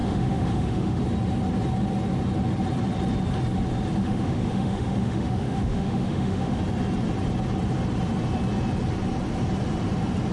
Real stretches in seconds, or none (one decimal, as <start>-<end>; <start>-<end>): 1.0-4.0; 6.6-10.3